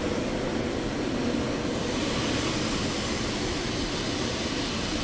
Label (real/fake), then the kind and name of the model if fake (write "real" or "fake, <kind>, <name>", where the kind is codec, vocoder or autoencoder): real